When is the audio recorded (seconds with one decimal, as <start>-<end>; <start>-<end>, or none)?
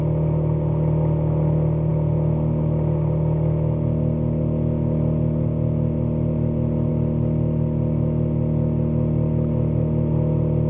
0.0-10.7